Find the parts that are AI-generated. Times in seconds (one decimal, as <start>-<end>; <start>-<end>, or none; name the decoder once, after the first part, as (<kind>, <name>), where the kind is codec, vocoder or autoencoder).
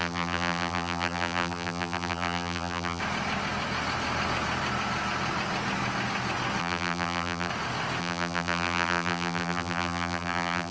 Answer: 0.0-3.0 (vocoder, BigVGAN v2); 6.6-7.5; 8.0-10.7